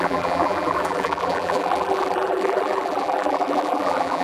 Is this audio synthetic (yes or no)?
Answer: yes